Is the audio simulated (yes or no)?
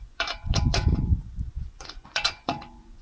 yes